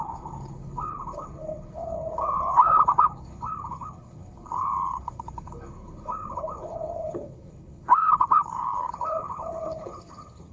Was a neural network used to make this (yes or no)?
yes